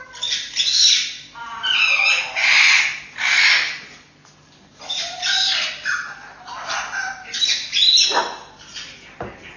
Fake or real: real